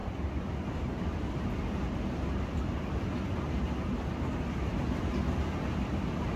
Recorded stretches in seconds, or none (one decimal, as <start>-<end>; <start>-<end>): 2.4-6.4